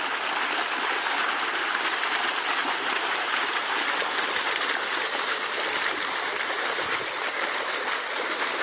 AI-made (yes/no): yes